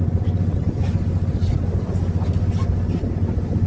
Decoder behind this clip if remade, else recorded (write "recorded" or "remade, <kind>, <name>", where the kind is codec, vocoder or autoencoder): recorded